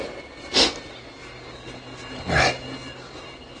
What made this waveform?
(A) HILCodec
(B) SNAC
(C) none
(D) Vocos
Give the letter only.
C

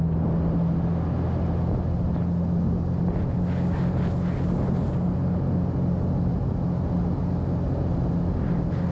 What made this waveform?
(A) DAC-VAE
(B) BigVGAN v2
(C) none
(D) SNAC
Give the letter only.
C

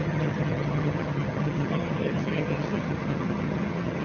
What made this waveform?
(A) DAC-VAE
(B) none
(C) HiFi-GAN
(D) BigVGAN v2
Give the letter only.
C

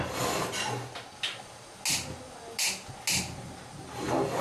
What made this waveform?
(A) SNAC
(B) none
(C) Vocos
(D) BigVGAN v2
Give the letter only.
B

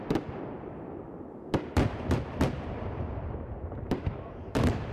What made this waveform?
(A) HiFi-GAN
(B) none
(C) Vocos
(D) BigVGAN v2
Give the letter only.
D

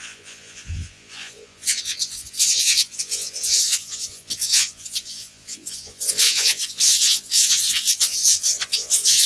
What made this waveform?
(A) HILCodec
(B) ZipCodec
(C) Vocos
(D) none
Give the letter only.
C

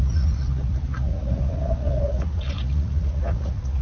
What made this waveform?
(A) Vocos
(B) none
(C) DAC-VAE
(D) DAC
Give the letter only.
A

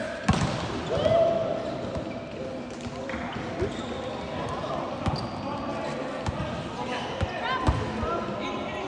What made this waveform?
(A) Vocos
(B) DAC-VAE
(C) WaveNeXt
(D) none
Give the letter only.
D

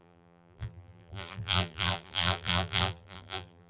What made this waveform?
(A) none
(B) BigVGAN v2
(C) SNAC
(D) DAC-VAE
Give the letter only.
B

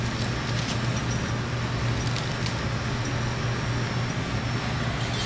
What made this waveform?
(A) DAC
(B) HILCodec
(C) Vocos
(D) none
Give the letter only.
D